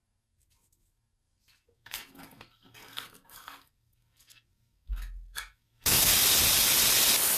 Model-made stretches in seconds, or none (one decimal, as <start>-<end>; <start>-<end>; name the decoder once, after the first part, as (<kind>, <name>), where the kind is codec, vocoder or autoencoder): 0.0-6.1 (codec, SNAC)